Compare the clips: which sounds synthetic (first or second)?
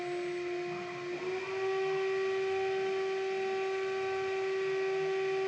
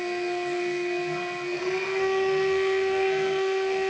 second